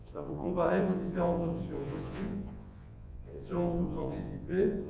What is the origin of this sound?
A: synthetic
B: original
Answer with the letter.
A